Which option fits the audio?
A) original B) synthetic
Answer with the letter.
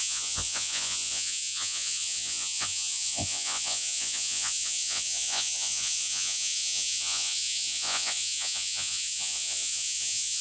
B